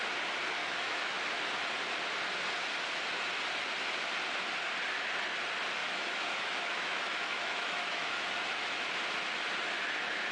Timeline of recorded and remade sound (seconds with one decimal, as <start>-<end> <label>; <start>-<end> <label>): 0.0-0.6 recorded; 0.6-1.2 remade; 1.2-5.8 recorded; 5.8-8.8 remade; 8.8-10.3 recorded